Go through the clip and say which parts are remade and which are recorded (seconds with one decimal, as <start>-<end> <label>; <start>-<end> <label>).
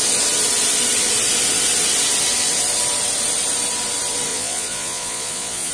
0.0-4.3 recorded; 4.3-5.7 remade